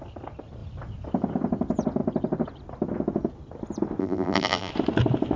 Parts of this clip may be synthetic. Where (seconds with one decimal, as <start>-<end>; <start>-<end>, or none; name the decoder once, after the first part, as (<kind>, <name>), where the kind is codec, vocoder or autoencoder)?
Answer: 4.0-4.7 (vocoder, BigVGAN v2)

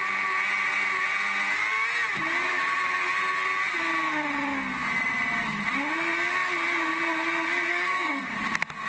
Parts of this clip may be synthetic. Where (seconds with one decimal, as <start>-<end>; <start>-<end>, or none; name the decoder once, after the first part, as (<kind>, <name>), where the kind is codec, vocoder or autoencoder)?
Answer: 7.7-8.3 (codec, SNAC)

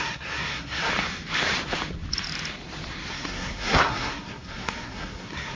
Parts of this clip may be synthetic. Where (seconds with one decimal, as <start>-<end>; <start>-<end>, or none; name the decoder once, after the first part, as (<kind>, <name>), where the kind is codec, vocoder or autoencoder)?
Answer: 0.0-0.9 (codec, SNAC); 3.1-5.6

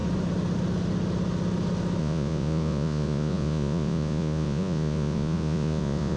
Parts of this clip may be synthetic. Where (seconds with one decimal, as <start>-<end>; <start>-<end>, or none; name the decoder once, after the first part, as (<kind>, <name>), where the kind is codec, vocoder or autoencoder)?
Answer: 2.0-6.2 (vocoder, Vocos)